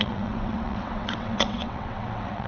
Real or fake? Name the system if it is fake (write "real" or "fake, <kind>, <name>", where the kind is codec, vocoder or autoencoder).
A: fake, vocoder, WaveNeXt